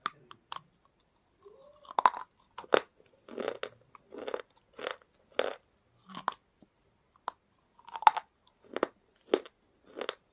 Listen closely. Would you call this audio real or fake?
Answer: real